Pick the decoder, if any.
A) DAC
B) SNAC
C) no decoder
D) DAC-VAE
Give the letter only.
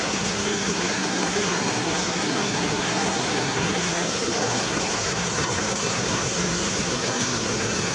B